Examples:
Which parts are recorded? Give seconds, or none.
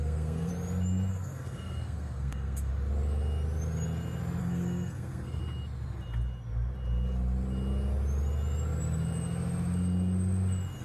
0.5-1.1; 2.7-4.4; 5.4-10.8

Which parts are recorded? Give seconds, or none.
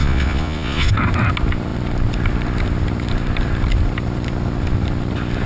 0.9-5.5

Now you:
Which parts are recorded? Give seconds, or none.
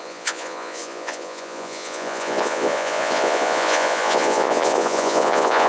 none